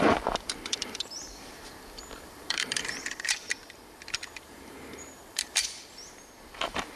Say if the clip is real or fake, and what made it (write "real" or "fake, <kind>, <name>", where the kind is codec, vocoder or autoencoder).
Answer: fake, vocoder, BigVGAN v2